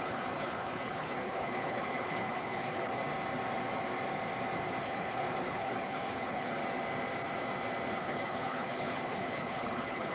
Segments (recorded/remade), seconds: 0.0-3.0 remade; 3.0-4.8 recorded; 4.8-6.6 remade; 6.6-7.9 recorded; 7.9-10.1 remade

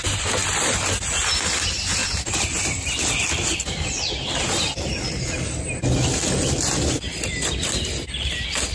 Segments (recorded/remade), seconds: 0.0-8.7 recorded

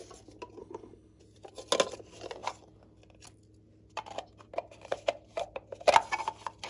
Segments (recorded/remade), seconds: 0.0-0.6 recorded; 0.6-1.2 remade; 1.2-6.7 recorded